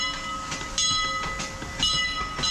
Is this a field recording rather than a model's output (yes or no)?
yes